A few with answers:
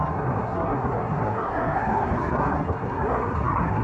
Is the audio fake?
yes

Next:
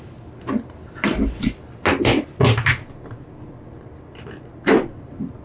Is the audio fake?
no